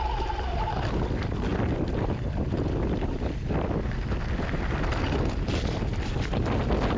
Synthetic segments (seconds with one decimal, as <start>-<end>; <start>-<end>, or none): none